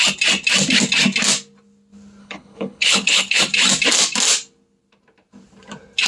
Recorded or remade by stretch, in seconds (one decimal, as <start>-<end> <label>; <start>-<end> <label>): 0.0-2.2 recorded; 2.2-3.4 remade; 3.4-6.1 recorded